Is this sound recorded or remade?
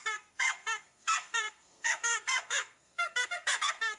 remade